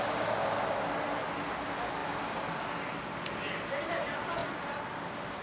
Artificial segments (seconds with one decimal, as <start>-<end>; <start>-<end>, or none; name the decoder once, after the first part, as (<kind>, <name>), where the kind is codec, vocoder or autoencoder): none